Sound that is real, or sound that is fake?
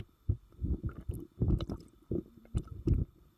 fake